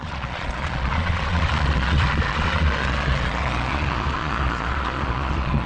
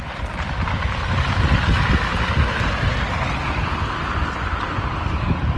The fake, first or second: first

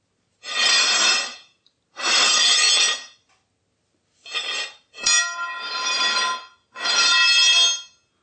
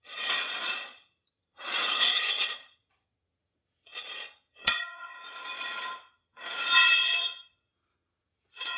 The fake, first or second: second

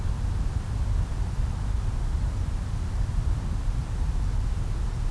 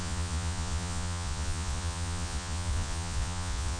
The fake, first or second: second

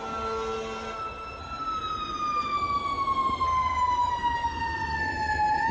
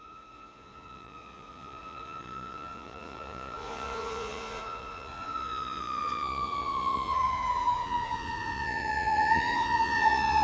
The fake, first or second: second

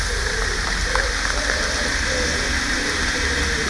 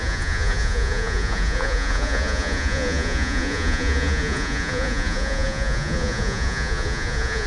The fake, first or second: second